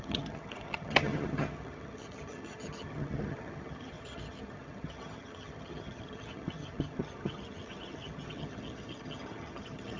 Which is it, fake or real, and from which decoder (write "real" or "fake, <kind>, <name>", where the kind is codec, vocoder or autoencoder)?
fake, vocoder, HiFi-GAN